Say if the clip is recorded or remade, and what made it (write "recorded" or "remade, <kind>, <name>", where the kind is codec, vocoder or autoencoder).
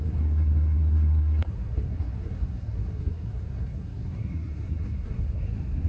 remade, codec, SNAC